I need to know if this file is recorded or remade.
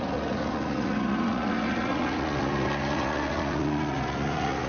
remade